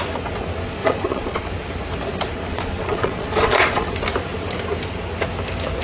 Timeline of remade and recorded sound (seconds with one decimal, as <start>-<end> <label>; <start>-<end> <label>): 0.0-0.8 recorded; 0.8-1.4 remade; 1.4-2.5 recorded; 2.5-3.9 remade; 3.9-5.8 recorded